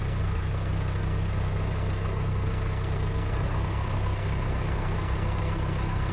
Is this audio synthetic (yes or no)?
yes